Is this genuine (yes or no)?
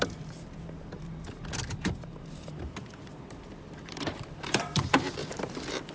no